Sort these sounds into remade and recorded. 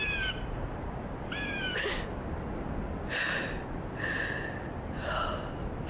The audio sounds recorded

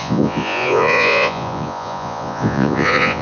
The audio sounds remade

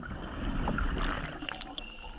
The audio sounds recorded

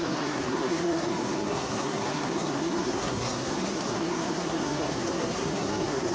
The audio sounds remade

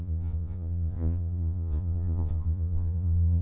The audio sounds remade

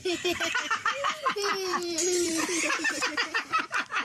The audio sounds remade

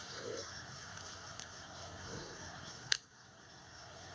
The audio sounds remade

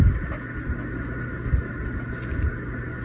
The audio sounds recorded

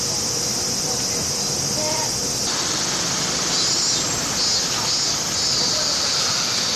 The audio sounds recorded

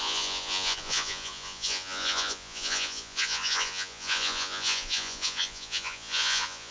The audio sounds remade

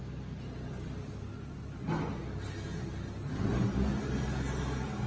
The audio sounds recorded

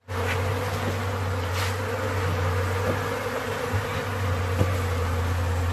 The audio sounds recorded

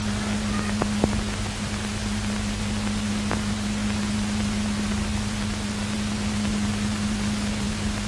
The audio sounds recorded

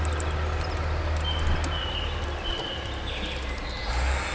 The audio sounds recorded